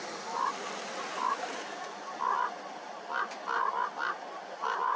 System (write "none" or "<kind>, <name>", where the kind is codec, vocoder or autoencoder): none